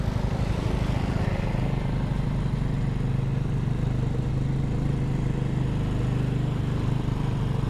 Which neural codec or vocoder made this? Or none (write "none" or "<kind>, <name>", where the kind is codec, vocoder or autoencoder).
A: none